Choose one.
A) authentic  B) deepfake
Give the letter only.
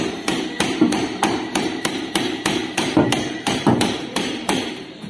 B